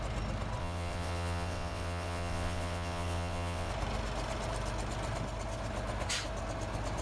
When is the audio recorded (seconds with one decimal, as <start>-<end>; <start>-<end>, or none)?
0.0-0.6; 3.7-7.0